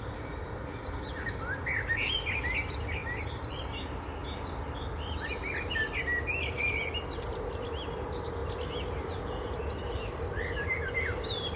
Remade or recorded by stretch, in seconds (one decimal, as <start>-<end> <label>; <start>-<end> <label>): 0.0-11.6 recorded